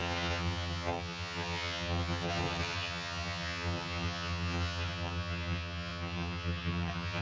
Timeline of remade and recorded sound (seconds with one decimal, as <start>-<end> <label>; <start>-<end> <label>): 0.0-7.2 remade